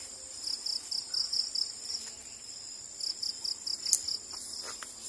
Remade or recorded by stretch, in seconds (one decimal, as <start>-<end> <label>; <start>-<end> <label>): 0.0-5.1 recorded